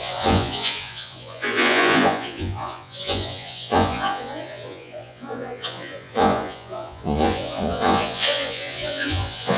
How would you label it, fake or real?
fake